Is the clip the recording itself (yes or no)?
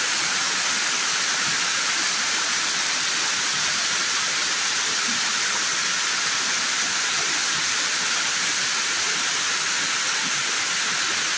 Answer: yes